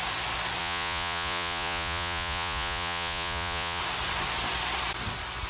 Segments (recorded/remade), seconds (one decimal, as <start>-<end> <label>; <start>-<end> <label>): 0.0-0.6 recorded; 0.6-3.8 remade; 3.8-5.5 recorded